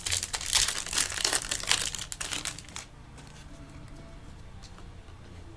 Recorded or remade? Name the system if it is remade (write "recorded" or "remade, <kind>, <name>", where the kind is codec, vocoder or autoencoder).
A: recorded